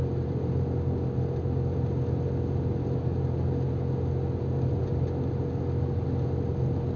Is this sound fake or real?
real